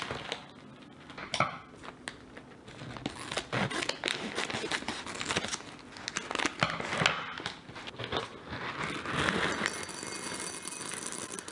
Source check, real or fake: real